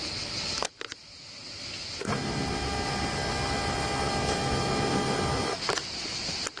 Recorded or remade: recorded